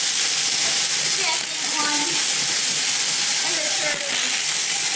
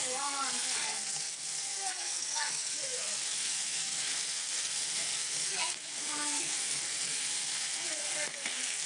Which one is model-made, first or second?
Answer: second